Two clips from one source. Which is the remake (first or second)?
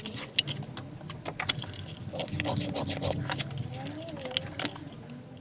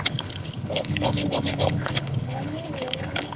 second